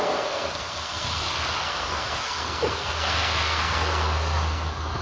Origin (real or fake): fake